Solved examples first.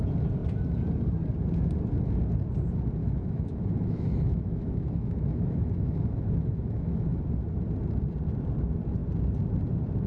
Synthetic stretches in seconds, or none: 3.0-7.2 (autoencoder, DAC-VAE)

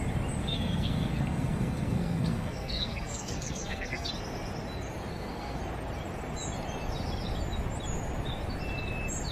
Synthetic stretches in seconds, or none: 0.4-4.1 (codec, SNAC); 5.1-5.6

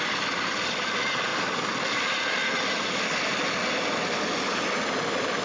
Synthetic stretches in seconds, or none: none

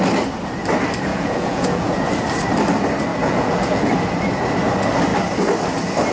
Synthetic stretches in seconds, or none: 1.1-2.1 (vocoder, Vocos); 3.1-3.9